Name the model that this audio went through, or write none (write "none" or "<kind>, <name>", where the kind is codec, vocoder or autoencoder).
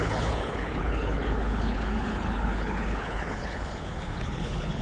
codec, HILCodec